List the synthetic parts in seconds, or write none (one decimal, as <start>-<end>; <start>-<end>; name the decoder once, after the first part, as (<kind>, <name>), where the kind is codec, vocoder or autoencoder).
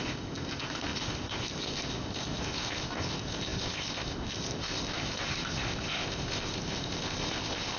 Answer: 0.0-7.8 (codec, ZipCodec)